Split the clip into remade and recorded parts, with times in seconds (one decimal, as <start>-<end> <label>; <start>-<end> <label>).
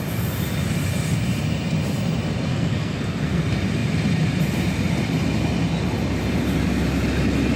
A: 0.0-2.5 recorded; 2.5-3.4 remade; 3.4-7.6 recorded